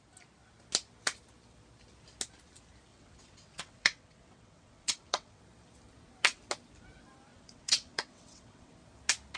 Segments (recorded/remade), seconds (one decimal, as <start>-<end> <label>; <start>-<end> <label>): 0.0-2.9 recorded; 2.9-5.4 remade; 5.4-7.3 recorded; 7.3-8.7 remade; 8.7-9.4 recorded